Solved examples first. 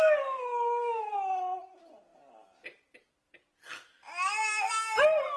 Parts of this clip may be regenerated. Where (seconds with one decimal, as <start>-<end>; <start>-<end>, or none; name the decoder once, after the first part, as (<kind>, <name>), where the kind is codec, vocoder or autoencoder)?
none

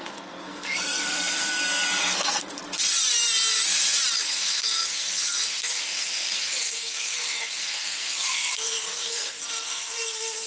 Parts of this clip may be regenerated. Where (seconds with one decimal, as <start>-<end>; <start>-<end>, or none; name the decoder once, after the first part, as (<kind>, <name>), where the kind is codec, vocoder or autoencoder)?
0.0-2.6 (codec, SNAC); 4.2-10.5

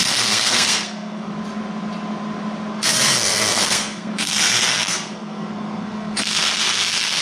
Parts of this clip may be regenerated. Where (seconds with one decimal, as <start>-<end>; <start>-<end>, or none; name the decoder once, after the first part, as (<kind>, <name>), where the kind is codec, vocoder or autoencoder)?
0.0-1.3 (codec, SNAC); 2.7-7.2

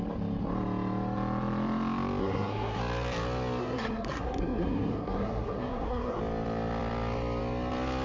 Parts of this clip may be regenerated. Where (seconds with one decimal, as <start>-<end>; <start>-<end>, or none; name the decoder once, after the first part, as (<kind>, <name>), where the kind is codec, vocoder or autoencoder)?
2.2-2.8 (codec, SNAC); 3.6-6.2

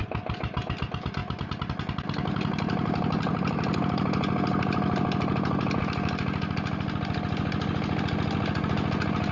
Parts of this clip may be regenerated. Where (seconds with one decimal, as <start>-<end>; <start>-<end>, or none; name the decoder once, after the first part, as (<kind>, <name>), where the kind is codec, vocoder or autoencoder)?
none

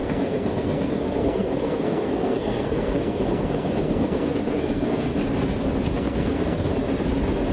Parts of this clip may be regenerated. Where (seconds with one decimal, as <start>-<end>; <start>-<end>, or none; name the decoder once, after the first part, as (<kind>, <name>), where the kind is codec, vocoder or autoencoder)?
0.0-5.2 (codec, SNAC); 5.9-6.7